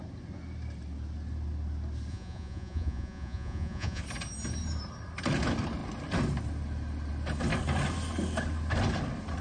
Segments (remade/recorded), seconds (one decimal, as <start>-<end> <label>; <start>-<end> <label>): 0.0-2.1 recorded; 2.1-4.0 remade; 4.0-9.4 recorded

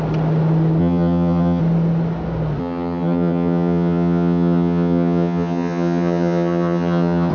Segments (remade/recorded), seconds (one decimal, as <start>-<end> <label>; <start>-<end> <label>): 0.0-0.8 recorded; 0.8-1.6 remade; 1.6-2.6 recorded; 2.6-7.3 remade

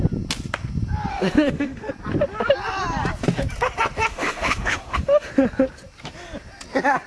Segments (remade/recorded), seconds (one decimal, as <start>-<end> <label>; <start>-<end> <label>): 0.0-1.1 recorded; 1.1-1.9 remade; 1.9-4.1 recorded; 4.1-5.3 remade; 5.3-7.1 recorded

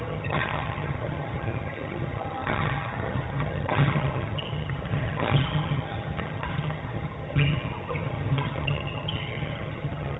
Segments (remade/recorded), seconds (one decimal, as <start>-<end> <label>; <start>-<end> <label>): 0.0-10.2 remade

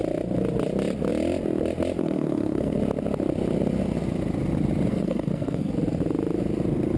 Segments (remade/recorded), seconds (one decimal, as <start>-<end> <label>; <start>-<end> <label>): 0.0-2.0 recorded; 2.0-2.8 remade; 2.8-4.9 recorded; 4.9-5.7 remade; 5.7-7.0 recorded